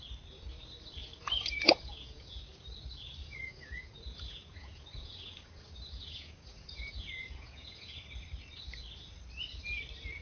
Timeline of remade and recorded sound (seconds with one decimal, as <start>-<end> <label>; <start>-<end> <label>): 0.0-1.0 recorded; 1.0-2.4 remade; 2.4-3.2 recorded; 3.2-8.0 remade; 8.0-10.2 recorded